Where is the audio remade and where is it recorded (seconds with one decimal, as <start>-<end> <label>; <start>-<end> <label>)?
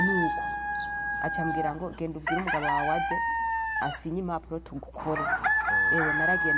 0.0-6.6 recorded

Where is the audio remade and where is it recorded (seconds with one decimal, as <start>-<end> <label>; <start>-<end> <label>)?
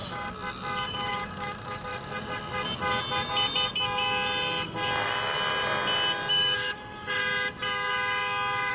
0.0-0.9 recorded; 0.9-1.9 remade; 1.9-6.3 recorded; 6.3-7.2 remade; 7.2-8.7 recorded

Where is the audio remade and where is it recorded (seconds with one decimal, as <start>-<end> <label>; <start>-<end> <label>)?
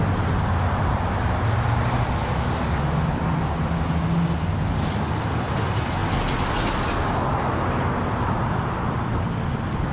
0.0-9.9 recorded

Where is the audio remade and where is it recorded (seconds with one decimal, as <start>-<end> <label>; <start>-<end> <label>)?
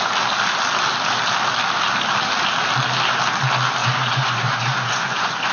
0.0-3.8 recorded; 3.8-5.5 remade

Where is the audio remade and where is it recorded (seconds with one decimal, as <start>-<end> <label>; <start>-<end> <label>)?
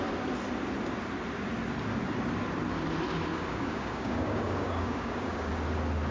0.0-3.3 recorded; 3.3-5.5 remade; 5.5-6.1 recorded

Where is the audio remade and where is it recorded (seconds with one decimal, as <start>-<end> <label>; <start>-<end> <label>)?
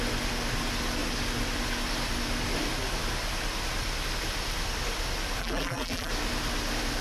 0.0-5.4 recorded; 5.4-6.1 remade; 6.1-7.0 recorded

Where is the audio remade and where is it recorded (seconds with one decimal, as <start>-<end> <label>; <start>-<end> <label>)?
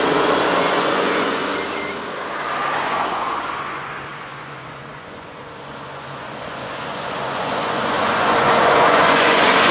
0.0-1.5 remade; 1.5-2.7 recorded; 2.7-9.7 remade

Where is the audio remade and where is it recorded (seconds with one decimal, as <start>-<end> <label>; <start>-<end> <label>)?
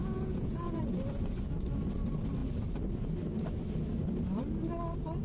0.0-0.8 remade; 0.8-5.2 recorded